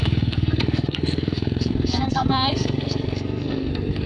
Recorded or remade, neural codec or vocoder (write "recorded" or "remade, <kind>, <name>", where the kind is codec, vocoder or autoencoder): remade, codec, SNAC